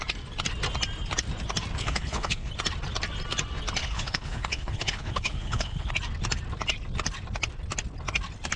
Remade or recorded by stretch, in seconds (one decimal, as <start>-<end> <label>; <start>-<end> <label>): 0.0-1.8 recorded; 1.8-2.5 remade; 2.5-3.8 recorded; 3.8-5.9 remade; 5.9-8.6 recorded